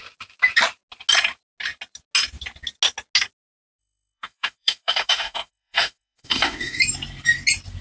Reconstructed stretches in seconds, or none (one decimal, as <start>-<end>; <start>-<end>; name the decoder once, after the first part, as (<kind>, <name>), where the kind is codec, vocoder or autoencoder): 3.8-6.8 (autoencoder, DAC-VAE)